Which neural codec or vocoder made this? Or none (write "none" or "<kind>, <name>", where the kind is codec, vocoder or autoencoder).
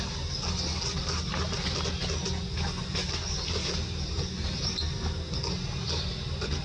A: none